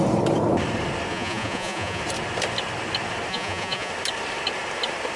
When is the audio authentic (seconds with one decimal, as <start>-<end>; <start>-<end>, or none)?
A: 0.0-1.1; 2.0-3.3; 3.9-5.2